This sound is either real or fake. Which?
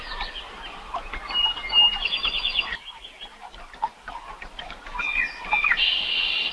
real